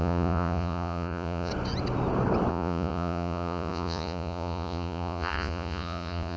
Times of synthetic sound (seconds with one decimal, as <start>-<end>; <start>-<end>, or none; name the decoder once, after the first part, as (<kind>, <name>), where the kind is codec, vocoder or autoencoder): 0.0-1.5 (vocoder, Vocos); 2.5-6.4